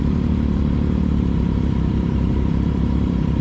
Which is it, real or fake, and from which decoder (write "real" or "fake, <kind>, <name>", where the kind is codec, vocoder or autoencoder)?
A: fake, vocoder, BigVGAN v2